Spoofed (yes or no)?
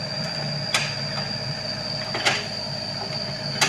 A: no